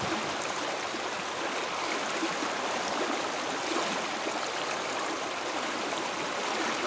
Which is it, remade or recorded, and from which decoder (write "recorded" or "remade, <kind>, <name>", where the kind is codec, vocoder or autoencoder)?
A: recorded